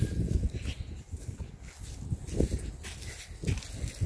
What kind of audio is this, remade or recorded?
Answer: recorded